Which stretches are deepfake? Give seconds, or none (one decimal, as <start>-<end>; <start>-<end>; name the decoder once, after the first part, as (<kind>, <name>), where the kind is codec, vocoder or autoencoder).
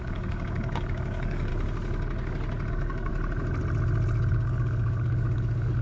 0.0-1.5 (codec, DAC); 2.7-3.1; 4.3-5.8